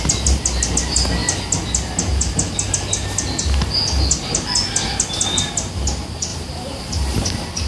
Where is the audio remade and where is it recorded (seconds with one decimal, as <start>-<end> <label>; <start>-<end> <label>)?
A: 0.0-6.3 recorded; 6.3-7.3 remade; 7.3-7.7 recorded